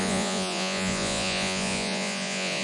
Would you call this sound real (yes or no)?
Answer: no